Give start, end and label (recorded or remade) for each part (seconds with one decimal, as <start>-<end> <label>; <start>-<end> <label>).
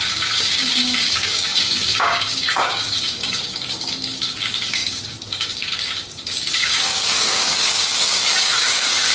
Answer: 0.0-9.1 remade